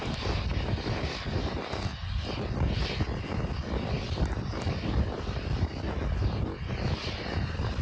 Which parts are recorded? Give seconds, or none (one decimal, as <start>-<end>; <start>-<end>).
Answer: 0.0-7.8